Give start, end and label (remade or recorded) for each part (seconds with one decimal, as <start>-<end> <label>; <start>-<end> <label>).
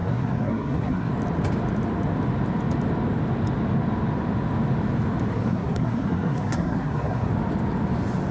0.0-1.1 remade; 1.1-5.3 recorded; 5.3-7.3 remade; 7.3-8.3 recorded